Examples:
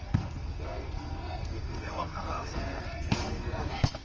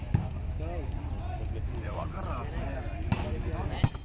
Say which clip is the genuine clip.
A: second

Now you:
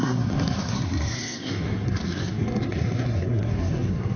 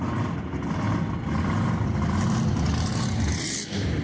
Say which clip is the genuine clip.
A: second